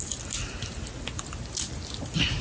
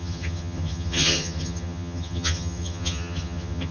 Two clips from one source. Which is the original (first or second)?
first